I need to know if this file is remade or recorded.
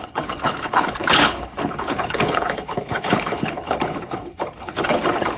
remade